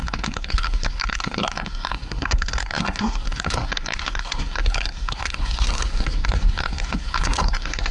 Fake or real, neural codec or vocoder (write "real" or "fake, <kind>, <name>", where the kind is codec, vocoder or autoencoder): fake, codec, SNAC